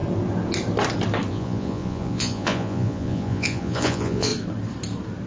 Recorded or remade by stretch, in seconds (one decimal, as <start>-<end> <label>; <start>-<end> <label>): 0.0-1.3 recorded; 1.3-4.3 remade; 4.3-5.3 recorded